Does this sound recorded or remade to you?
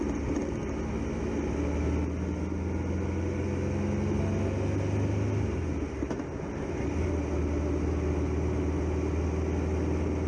recorded